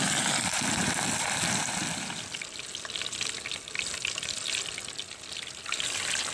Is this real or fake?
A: real